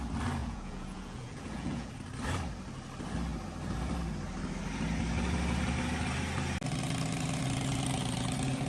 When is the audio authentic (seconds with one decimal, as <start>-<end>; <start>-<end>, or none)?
0.0-0.4; 1.9-8.7